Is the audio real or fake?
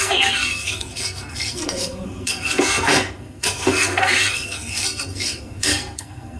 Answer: fake